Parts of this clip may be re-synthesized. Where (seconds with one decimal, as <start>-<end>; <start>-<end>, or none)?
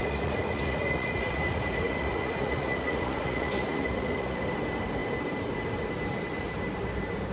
0.0-4.4